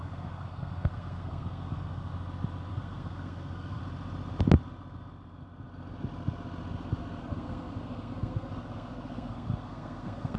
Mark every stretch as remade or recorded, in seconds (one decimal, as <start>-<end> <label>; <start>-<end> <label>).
0.0-2.1 remade; 2.1-2.7 recorded; 2.7-3.8 remade; 3.8-7.2 recorded; 7.2-10.4 remade